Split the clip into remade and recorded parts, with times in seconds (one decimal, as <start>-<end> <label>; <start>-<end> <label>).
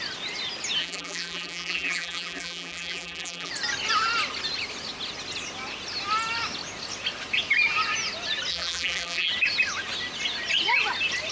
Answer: 0.0-0.8 recorded; 0.8-3.5 remade; 3.5-8.5 recorded; 8.5-9.3 remade; 9.3-11.3 recorded